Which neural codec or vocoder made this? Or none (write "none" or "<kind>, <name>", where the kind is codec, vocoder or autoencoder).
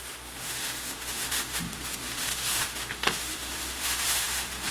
autoencoder, DAC-VAE